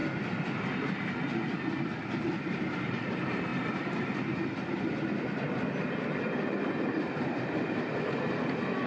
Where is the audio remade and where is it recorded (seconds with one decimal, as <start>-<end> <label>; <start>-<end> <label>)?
0.0-8.9 recorded